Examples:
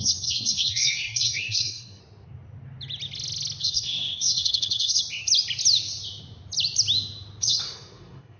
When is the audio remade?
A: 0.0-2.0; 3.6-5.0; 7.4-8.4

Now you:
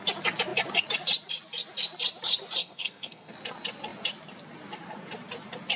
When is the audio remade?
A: 2.6-3.3

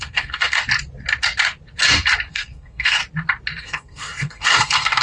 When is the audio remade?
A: 0.0-0.6; 2.3-3.0; 3.6-5.0